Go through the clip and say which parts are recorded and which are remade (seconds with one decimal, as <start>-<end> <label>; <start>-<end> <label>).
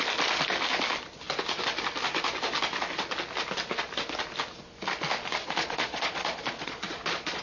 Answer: 0.0-5.4 recorded; 5.4-7.4 remade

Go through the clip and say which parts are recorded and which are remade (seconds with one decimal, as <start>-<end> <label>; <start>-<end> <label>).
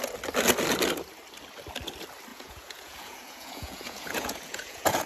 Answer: 0.0-2.3 recorded; 2.3-5.1 remade